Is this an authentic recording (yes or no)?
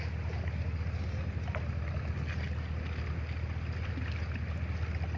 yes